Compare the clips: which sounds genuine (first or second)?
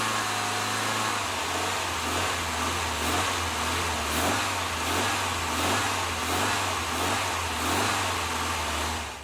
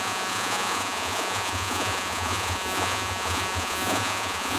first